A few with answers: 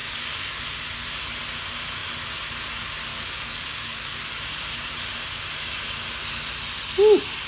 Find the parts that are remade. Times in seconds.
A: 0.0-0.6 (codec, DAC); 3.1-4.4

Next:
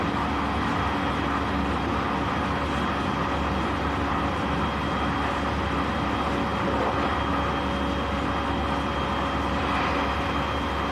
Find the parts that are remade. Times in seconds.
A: none

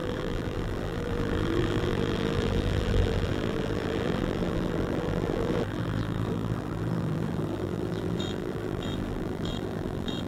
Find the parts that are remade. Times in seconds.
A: 0.0-10.3 (vocoder, BigVGAN v2)

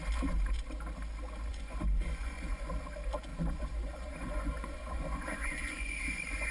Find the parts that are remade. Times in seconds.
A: 1.5-2.7 (vocoder, Vocos); 3.3-6.5